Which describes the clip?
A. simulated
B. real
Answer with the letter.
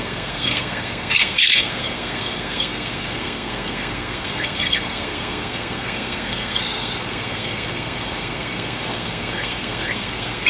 A